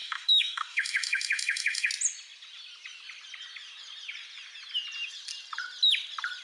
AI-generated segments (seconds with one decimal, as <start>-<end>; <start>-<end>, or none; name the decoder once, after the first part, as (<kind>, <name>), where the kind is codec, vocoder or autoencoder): 0.0-1.9 (autoencoder, DAC-VAE)